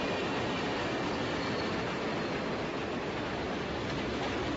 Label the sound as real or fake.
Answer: real